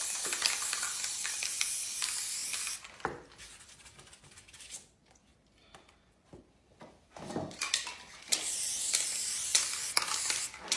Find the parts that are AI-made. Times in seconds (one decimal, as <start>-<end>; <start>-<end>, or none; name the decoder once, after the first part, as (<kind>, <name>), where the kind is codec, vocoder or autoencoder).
none